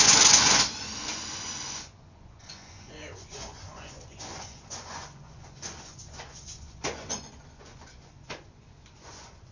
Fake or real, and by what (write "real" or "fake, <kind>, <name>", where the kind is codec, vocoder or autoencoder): fake, vocoder, Vocos